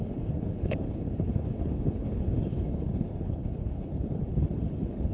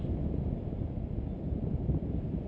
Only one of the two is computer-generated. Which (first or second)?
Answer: first